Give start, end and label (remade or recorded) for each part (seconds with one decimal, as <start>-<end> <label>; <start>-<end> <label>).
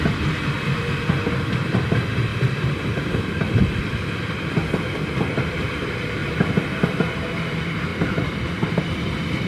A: 0.0-2.3 recorded; 2.3-3.6 remade; 3.6-7.9 recorded; 7.9-9.5 remade